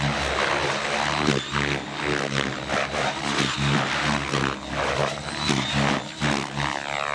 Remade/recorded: recorded